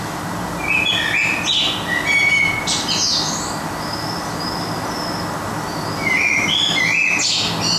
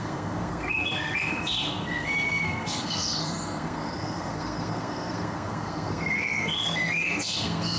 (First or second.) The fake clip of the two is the second